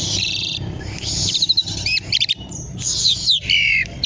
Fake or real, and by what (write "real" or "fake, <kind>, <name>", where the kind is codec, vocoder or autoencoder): fake, vocoder, BigVGAN v2